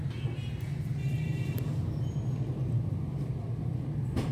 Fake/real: real